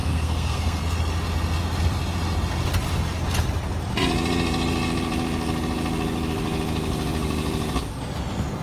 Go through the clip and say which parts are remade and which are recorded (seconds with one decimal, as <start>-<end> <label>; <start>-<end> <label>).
0.0-0.8 remade; 0.8-8.6 recorded